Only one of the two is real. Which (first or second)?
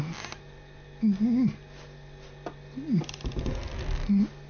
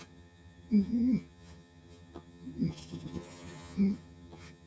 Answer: first